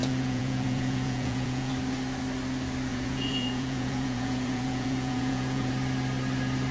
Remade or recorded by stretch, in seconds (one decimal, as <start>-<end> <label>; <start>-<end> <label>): 0.0-1.7 remade; 1.7-2.9 recorded; 2.9-5.7 remade; 5.7-6.7 recorded